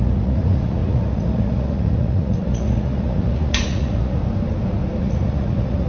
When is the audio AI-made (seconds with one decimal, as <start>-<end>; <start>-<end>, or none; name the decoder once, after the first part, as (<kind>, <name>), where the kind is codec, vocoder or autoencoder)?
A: 0.0-4.2 (vocoder, Vocos); 5.0-5.9